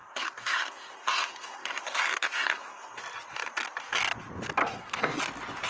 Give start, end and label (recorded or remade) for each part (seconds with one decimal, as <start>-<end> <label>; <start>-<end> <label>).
0.0-3.0 remade; 3.0-4.6 recorded; 4.6-5.2 remade; 5.2-5.7 recorded